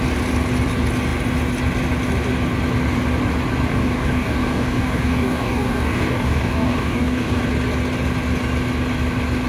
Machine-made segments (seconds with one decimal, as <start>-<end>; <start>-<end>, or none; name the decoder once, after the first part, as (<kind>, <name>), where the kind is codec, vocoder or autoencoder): 3.7-7.4 (codec, DAC)